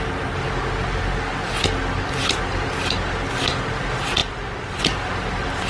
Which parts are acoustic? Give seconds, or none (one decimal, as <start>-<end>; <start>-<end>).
0.0-5.7